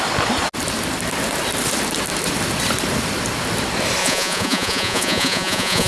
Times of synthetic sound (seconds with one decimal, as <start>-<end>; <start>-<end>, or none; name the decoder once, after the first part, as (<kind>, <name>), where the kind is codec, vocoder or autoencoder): 4.0-5.9 (vocoder, Vocos)